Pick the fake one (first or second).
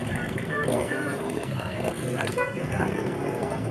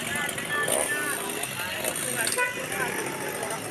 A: first